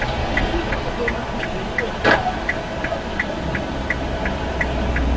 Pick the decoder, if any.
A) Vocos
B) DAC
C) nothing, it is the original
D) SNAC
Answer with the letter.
C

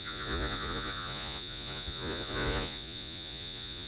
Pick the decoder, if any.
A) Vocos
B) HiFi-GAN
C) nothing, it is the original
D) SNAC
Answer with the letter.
A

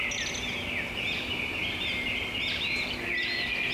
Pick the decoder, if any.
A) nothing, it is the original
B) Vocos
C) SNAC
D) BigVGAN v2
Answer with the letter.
A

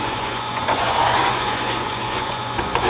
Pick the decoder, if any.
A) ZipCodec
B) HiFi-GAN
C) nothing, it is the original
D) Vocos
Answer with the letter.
D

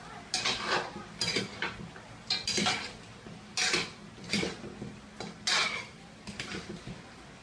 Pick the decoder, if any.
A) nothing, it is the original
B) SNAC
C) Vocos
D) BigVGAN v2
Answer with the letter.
A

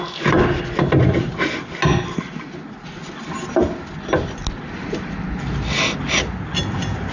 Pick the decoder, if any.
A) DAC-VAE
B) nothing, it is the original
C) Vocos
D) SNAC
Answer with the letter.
B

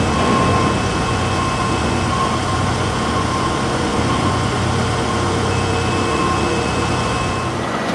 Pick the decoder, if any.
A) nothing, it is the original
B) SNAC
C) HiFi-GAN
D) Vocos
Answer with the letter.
D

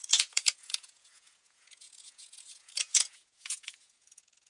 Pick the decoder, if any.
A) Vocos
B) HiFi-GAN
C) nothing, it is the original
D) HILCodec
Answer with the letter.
A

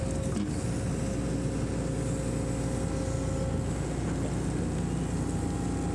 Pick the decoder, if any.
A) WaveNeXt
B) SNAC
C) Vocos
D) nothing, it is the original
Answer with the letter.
D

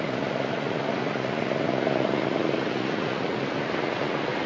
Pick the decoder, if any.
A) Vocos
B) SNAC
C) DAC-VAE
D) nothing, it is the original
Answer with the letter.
A